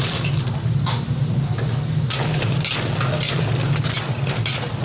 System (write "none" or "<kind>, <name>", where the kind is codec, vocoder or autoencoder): none